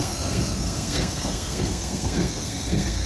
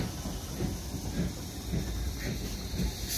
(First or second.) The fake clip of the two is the first